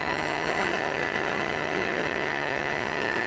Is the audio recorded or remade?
remade